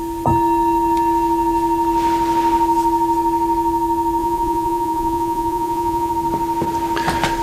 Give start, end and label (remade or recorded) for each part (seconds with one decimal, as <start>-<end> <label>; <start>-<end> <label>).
0.0-4.2 recorded; 4.2-6.1 remade; 6.1-7.4 recorded